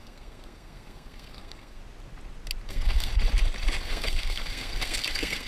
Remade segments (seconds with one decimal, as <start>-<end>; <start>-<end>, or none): 0.0-1.8; 2.7-3.1; 3.8-5.5